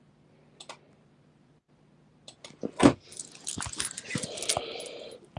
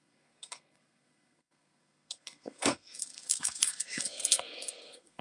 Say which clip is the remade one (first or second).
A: second